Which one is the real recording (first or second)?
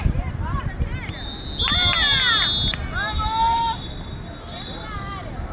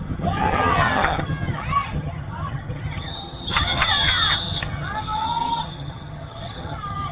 first